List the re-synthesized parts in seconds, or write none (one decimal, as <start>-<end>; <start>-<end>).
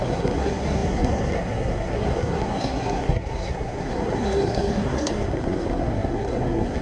0.0-6.8